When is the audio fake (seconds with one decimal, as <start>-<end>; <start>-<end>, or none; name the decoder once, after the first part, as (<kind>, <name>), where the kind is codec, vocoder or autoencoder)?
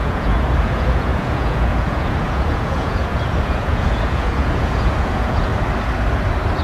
0.0-5.5 (vocoder, Vocos)